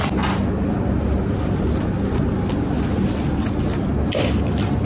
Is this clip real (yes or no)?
yes